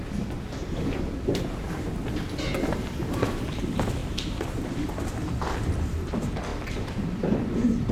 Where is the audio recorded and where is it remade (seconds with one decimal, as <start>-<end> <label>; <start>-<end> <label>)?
0.0-0.6 recorded; 0.6-1.3 remade; 1.3-4.0 recorded; 4.0-5.1 remade; 5.1-6.5 recorded; 6.5-7.2 remade; 7.2-7.9 recorded